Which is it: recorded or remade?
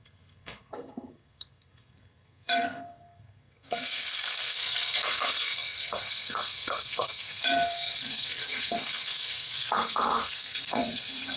remade